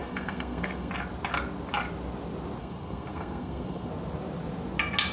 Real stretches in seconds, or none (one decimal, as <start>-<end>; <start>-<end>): 0.9-2.6; 3.9-5.1